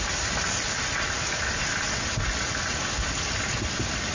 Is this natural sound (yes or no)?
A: no